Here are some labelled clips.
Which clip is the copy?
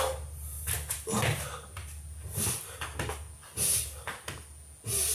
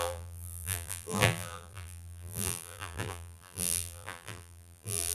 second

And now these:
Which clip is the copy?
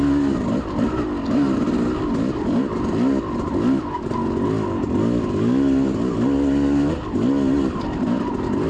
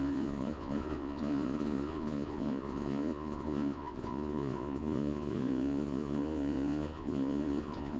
second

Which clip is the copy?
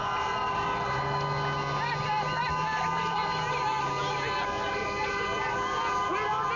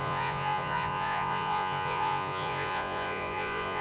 second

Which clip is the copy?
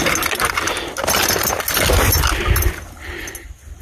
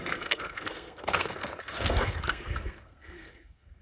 second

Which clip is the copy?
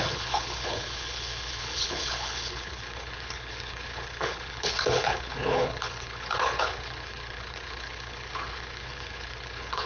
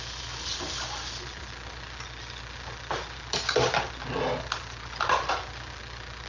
first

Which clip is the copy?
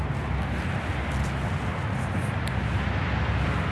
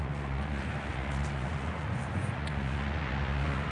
second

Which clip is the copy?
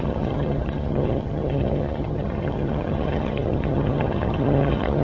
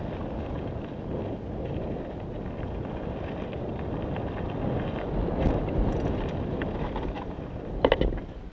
first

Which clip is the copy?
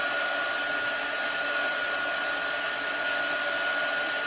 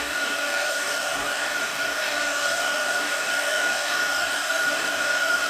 second